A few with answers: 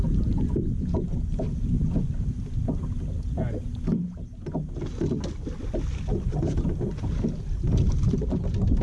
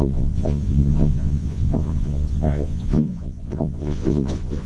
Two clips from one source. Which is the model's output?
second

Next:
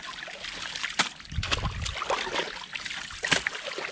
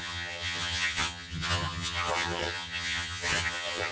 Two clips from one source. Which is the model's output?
second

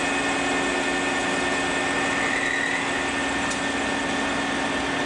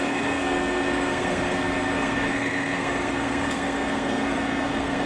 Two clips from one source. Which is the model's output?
second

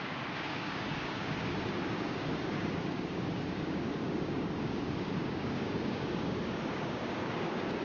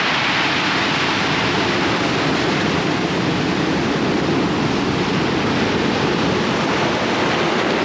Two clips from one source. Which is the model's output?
first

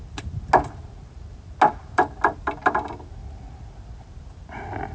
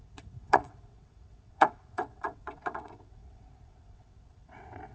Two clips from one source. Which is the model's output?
second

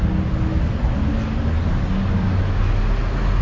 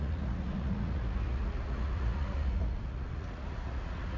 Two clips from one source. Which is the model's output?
second